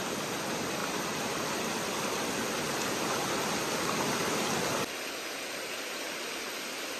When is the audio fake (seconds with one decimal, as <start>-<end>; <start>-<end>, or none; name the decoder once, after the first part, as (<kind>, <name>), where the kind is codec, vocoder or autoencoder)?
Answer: 0.8-1.5 (vocoder, BigVGAN v2)